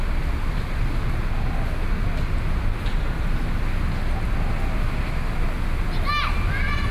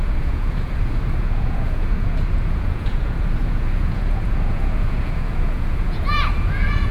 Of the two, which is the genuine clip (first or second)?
first